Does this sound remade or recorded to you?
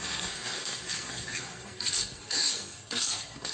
remade